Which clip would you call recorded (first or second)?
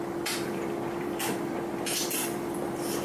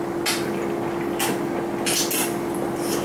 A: second